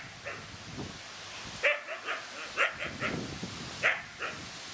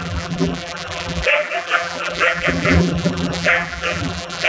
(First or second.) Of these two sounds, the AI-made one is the second